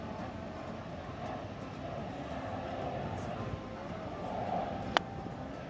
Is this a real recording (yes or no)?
yes